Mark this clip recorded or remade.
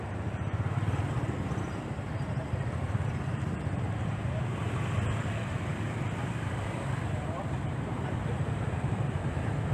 remade